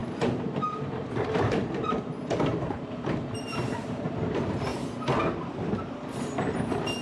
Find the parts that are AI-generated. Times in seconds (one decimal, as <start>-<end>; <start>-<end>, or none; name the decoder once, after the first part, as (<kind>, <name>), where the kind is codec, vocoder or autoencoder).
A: 0.0-4.7 (vocoder, BigVGAN v2); 5.8-7.0